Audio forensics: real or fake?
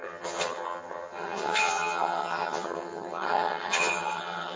fake